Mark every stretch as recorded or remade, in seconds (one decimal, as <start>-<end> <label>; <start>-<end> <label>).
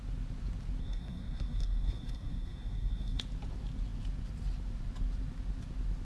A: 0.0-0.8 recorded; 0.8-3.2 remade; 3.2-6.0 recorded